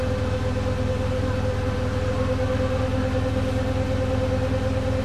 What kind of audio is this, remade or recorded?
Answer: recorded